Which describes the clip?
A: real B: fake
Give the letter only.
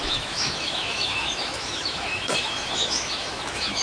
B